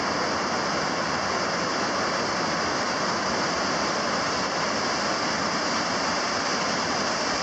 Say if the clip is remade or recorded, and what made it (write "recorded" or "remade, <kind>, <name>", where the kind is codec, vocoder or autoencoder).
recorded